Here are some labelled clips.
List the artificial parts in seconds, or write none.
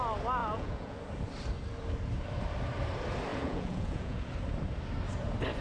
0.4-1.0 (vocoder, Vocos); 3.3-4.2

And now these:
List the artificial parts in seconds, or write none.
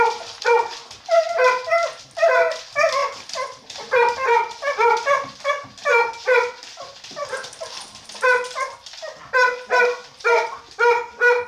none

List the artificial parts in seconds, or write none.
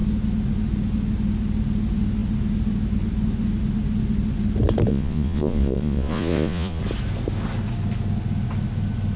4.9-6.8 (vocoder, Vocos)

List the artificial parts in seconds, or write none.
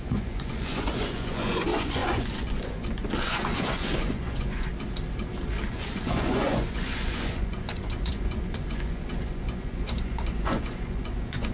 0.0-4.7 (vocoder, Vocos); 5.7-11.5